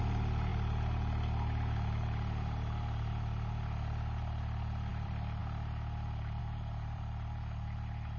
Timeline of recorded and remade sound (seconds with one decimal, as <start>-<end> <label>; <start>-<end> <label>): 0.0-0.5 remade; 0.5-4.9 recorded; 4.9-5.4 remade; 5.4-6.4 recorded; 6.4-8.2 remade